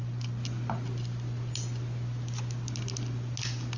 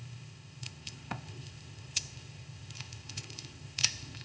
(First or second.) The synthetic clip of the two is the second